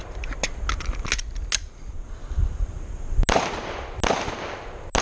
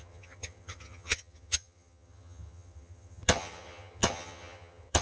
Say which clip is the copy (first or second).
second